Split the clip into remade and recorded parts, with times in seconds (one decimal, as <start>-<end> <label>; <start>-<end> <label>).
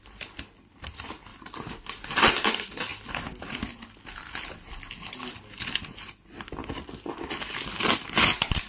0.0-8.7 recorded